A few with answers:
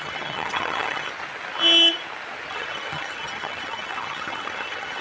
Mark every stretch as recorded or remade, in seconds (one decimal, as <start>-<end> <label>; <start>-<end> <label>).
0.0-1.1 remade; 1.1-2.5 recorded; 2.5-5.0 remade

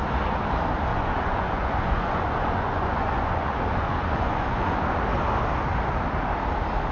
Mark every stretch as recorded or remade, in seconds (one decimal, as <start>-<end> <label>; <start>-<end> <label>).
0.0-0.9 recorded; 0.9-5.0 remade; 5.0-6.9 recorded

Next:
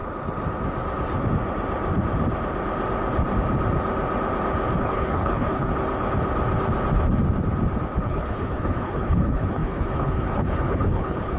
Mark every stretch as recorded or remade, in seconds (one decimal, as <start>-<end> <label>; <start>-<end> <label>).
0.0-4.8 recorded; 4.8-5.7 remade; 5.7-8.0 recorded; 8.0-11.4 remade

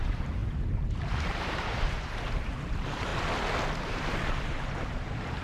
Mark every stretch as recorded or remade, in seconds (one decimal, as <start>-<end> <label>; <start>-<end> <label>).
0.0-3.1 remade; 3.1-3.8 recorded; 3.8-5.4 remade